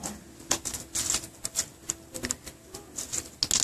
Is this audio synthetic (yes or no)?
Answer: no